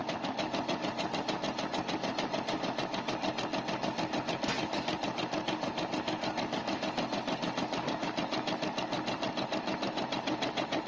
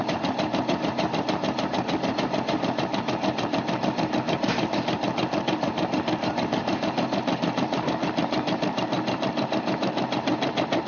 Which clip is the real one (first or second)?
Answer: first